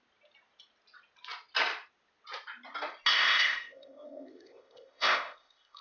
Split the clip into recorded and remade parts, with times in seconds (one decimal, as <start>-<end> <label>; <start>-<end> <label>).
0.0-3.1 recorded; 3.1-5.8 remade

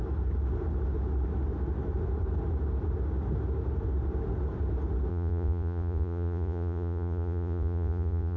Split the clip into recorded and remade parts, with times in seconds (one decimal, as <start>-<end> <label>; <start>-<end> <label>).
0.0-5.1 recorded; 5.1-8.4 remade

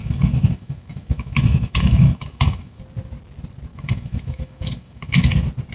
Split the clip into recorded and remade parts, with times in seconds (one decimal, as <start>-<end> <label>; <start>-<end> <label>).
0.0-2.8 remade; 2.8-3.7 recorded; 3.7-5.3 remade; 5.3-5.7 recorded

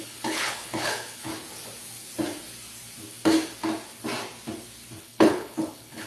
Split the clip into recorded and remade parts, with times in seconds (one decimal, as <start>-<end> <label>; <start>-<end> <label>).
0.0-1.3 remade; 1.3-5.0 recorded; 5.0-6.1 remade

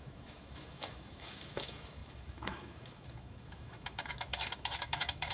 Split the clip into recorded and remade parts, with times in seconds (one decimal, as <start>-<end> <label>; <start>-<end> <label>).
0.0-5.3 remade

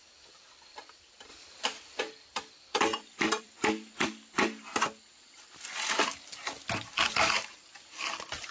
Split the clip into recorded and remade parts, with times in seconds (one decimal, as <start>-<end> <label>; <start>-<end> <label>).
0.0-8.5 remade

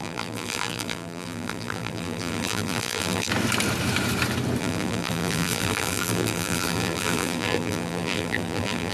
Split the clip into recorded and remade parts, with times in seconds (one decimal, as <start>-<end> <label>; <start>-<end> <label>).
0.0-3.3 remade; 3.3-4.6 recorded; 4.6-8.9 remade

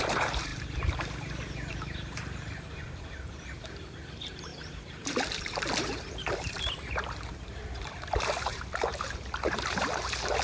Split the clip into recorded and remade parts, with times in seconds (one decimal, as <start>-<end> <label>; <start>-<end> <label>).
0.0-10.4 remade